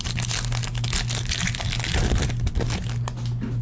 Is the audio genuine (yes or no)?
yes